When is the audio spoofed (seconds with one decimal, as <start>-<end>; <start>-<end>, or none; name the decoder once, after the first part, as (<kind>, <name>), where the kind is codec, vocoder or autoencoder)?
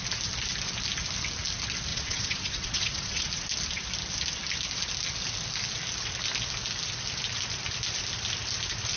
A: 1.9-3.2 (vocoder, WaveNeXt)